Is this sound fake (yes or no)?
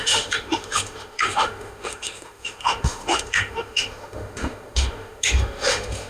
yes